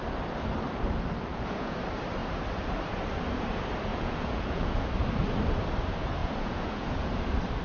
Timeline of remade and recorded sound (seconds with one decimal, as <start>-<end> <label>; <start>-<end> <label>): 0.0-1.3 recorded; 1.3-1.8 remade; 1.8-3.9 recorded; 3.9-4.9 remade; 4.9-6.2 recorded; 6.2-7.1 remade; 7.1-7.6 recorded